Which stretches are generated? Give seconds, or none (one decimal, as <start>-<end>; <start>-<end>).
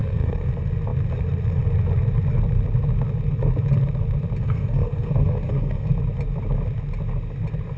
0.0-0.5; 4.4-5.9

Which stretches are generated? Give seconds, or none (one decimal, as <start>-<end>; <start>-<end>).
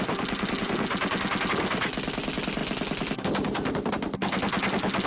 none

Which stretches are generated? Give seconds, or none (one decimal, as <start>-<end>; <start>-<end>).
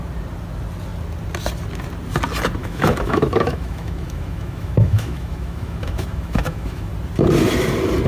2.6-6.9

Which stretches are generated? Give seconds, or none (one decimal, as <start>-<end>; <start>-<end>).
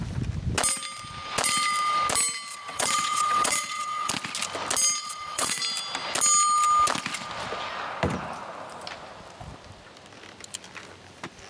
2.5-4.1; 5.0-5.6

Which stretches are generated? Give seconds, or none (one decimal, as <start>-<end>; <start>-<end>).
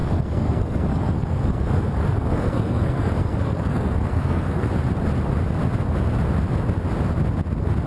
0.0-4.7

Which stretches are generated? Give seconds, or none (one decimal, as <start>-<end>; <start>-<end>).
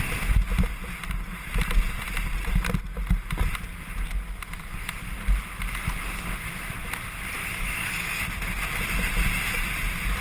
7.4-8.1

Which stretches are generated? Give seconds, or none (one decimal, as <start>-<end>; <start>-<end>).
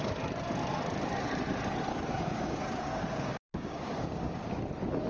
1.9-4.5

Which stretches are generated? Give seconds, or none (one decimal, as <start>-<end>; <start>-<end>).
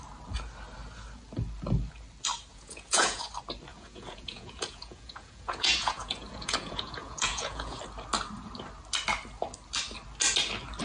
2.5-3.3; 3.7-7.8